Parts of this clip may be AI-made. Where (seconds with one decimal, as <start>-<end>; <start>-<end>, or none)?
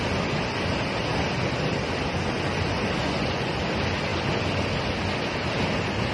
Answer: 3.0-3.5